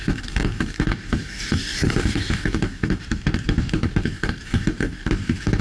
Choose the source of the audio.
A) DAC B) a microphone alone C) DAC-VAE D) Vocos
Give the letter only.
A